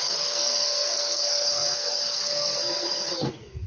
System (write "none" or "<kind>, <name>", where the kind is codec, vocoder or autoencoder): codec, SNAC